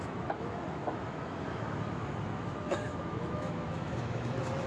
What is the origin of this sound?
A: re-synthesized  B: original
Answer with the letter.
A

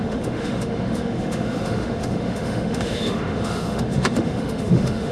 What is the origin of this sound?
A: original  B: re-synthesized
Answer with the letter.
B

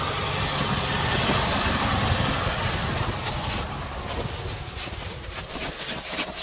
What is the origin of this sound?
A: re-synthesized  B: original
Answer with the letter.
B